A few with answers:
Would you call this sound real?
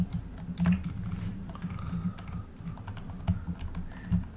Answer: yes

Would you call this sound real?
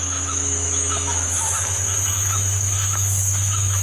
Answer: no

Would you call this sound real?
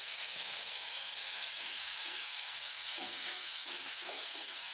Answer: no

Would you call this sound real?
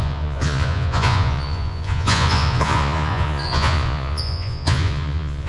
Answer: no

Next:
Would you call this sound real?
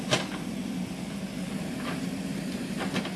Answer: yes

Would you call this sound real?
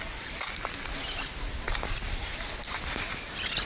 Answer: yes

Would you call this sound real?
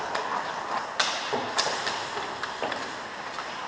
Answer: yes